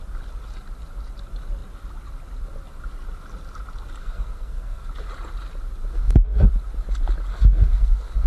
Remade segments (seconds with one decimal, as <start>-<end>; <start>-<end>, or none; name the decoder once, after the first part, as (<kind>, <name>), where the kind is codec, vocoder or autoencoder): 4.0-4.9 (codec, SNAC); 5.9-6.5; 7.3-8.3